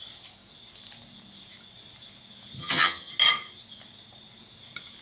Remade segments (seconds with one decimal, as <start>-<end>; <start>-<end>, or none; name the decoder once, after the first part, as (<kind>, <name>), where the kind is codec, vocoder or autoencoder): 2.6-3.1 (vocoder, HiFi-GAN)